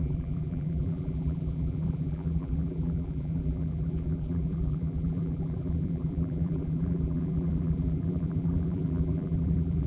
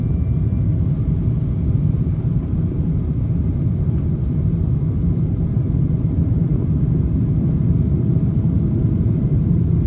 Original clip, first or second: second